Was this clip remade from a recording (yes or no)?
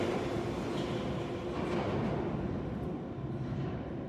no